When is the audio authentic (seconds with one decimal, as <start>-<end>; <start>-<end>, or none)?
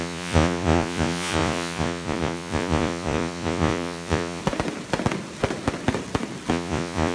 4.4-6.5